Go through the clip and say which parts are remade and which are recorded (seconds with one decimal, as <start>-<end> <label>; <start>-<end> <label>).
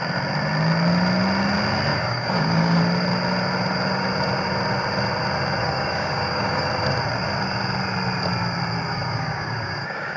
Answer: 0.0-1.9 recorded; 1.9-2.8 remade; 2.8-5.6 recorded; 5.6-6.7 remade; 6.7-8.9 recorded; 8.9-10.2 remade